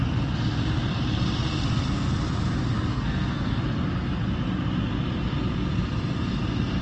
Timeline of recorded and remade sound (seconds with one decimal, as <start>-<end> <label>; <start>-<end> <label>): 0.0-2.9 recorded; 2.9-3.6 remade; 3.6-6.8 recorded